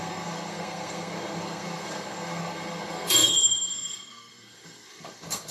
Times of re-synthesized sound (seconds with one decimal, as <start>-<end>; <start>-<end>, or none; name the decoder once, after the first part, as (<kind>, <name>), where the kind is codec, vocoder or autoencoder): 0.0-5.5 (codec, SNAC)